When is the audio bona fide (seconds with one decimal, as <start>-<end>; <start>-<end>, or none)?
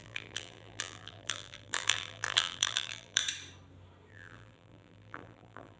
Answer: 3.2-4.1